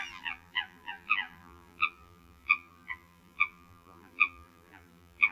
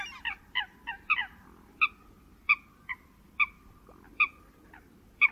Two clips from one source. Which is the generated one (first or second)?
first